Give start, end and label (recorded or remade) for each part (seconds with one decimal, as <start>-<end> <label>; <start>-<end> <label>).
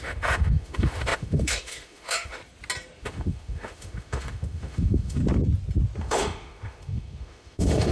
0.0-2.4 remade; 2.4-3.0 recorded; 3.0-5.2 remade; 5.2-6.0 recorded; 6.0-7.9 remade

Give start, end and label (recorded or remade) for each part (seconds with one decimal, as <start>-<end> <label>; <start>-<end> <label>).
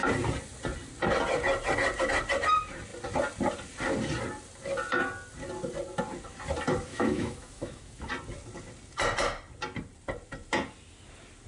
0.0-6.9 recorded; 6.9-8.1 remade; 8.1-11.5 recorded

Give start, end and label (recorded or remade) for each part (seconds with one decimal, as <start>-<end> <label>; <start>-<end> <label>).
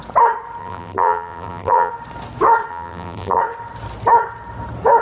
0.0-0.6 recorded; 0.6-1.9 remade; 1.9-2.7 recorded; 2.7-3.4 remade; 3.4-5.0 recorded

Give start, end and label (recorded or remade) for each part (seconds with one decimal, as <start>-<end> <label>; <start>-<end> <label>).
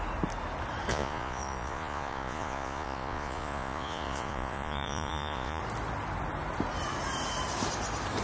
0.0-0.9 recorded; 0.9-5.6 remade; 5.6-8.2 recorded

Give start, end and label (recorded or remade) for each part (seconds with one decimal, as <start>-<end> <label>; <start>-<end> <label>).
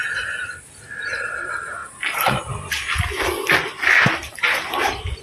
0.0-5.2 recorded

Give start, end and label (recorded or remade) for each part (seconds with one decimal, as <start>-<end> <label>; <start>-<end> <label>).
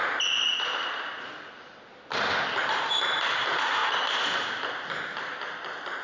0.0-2.4 recorded; 2.4-3.8 remade; 3.8-6.0 recorded